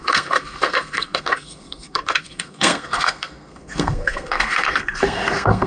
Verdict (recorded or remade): remade